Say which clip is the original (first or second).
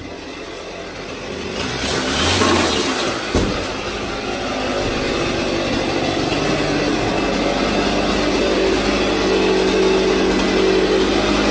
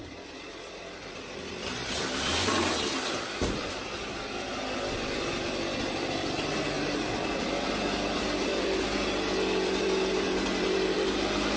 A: first